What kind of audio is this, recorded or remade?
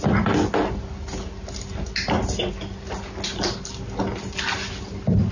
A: recorded